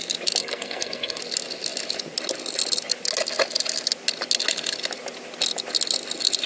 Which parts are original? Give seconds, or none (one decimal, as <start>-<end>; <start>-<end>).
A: 0.0-0.4; 1.2-6.5